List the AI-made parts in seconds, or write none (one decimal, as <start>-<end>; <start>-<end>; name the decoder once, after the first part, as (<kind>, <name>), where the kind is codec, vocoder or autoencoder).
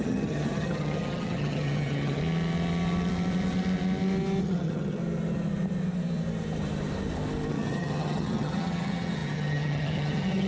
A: 0.0-2.2 (vocoder, HiFi-GAN); 4.4-5.0; 7.5-10.5